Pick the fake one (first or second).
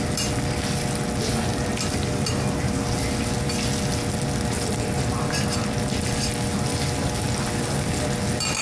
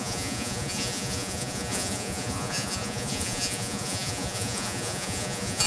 second